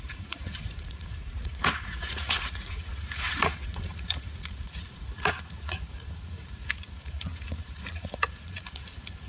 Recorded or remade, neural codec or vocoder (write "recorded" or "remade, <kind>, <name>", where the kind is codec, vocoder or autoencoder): remade, vocoder, Vocos